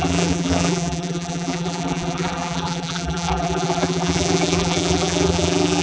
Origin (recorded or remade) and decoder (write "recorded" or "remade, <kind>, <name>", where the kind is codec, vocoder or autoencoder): remade, vocoder, BigVGAN v2